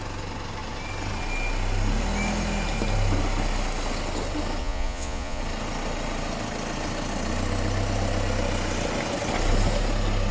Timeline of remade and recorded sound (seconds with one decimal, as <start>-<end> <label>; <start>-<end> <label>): 0.0-4.6 recorded; 4.6-5.4 remade; 5.4-10.3 recorded